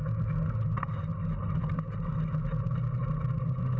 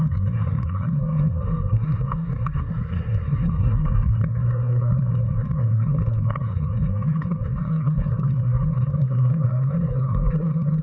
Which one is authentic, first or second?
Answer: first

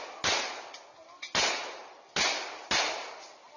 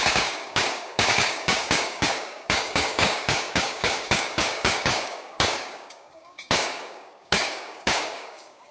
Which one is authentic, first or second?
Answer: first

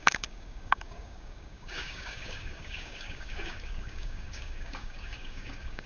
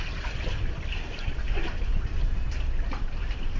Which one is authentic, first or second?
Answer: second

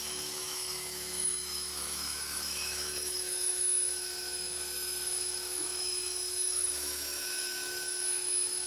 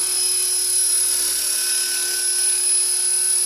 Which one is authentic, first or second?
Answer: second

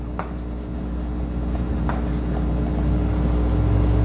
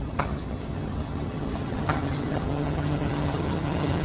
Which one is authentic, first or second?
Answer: first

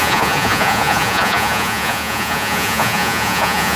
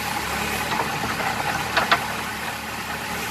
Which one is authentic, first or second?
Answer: second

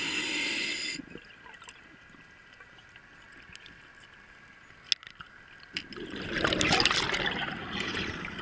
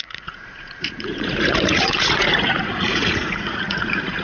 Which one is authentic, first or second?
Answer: first